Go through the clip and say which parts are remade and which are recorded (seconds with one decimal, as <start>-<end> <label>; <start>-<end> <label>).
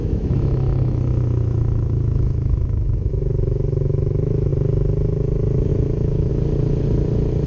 0.0-4.5 remade; 4.5-5.7 recorded; 5.7-6.3 remade; 6.3-7.5 recorded